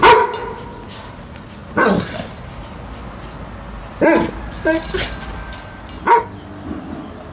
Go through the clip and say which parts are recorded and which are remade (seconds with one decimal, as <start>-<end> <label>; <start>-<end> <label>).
0.0-7.3 recorded